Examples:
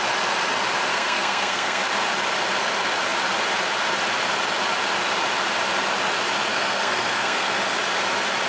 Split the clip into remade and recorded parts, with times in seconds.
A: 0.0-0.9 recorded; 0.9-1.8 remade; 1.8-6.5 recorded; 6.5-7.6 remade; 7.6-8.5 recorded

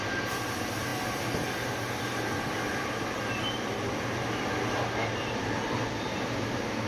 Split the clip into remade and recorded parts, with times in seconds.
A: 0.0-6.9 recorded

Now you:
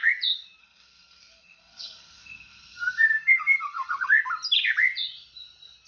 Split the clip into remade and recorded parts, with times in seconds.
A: 0.0-0.6 recorded; 0.6-4.1 remade; 4.1-5.9 recorded

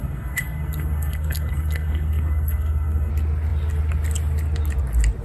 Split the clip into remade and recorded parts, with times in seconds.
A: 0.0-3.1 remade; 3.1-5.2 recorded

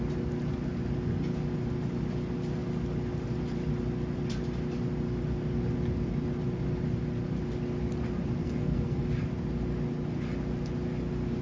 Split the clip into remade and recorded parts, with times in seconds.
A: 0.0-8.4 recorded; 8.4-9.0 remade; 9.0-11.4 recorded